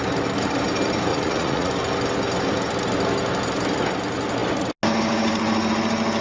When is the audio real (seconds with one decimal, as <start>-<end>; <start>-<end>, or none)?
0.0-1.1; 1.7-6.2